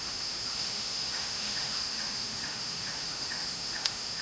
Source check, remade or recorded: remade